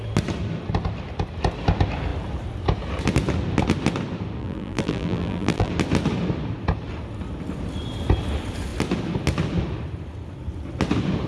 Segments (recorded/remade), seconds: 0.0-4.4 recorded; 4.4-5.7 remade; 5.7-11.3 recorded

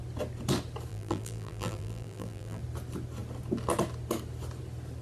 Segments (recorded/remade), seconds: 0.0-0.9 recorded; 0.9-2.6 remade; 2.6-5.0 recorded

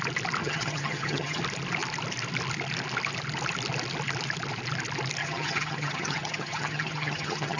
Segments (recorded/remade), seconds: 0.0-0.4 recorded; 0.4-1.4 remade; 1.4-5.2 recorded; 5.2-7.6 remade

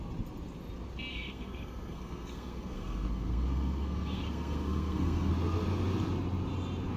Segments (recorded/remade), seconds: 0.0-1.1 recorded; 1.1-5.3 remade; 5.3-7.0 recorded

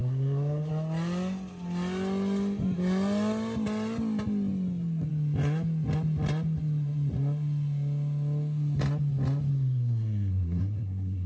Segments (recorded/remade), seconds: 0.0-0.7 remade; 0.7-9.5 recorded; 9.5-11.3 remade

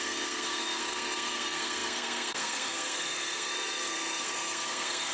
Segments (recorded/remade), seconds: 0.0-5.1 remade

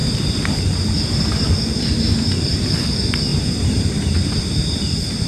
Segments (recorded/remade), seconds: 0.0-3.3 recorded; 3.3-3.9 remade; 3.9-5.3 recorded

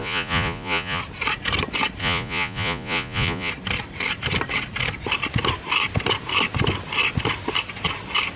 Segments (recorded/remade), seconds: 0.0-1.0 remade; 1.0-2.0 recorded; 2.0-3.5 remade; 3.5-8.4 recorded